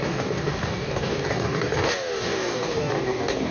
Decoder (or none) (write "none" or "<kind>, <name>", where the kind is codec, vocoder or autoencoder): codec, DAC